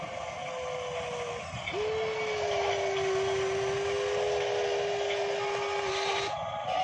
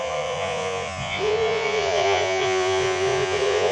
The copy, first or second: second